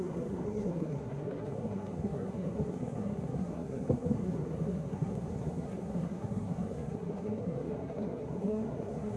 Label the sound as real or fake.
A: fake